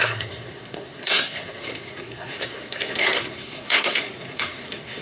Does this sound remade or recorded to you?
remade